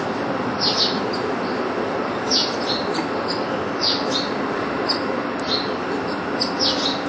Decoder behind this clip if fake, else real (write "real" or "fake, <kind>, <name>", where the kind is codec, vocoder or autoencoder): real